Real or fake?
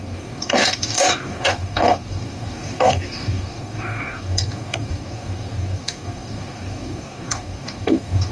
fake